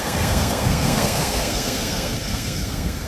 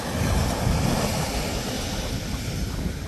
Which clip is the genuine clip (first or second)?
second